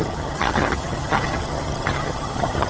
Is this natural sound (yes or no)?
no